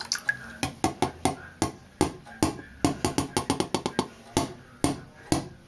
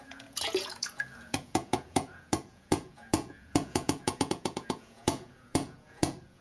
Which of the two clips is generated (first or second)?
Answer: second